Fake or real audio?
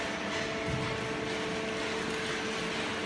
real